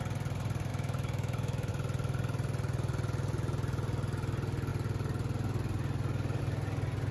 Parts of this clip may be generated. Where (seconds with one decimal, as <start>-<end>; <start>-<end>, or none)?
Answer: 0.7-1.7